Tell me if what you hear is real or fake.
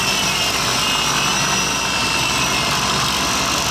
real